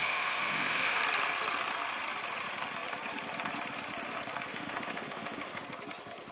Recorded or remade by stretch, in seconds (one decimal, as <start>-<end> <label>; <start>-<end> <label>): 0.0-1.0 remade; 1.0-4.5 recorded; 4.5-5.6 remade; 5.6-6.3 recorded